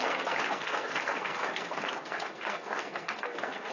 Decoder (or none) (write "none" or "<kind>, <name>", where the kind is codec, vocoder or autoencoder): codec, SNAC